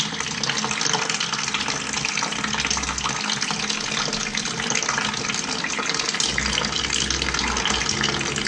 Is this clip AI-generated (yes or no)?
no